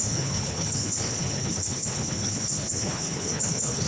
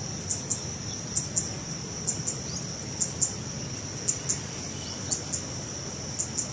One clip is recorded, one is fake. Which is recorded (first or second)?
second